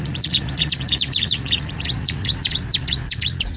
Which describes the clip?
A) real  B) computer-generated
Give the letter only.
B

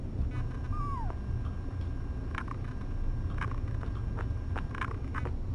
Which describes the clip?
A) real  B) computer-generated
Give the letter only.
A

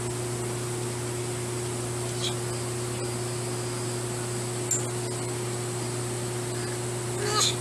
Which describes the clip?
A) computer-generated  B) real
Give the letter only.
B